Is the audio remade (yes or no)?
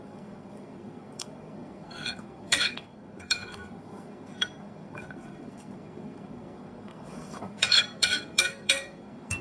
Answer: yes